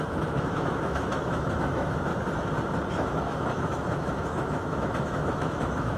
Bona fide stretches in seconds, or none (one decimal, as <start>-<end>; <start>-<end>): 2.1-2.9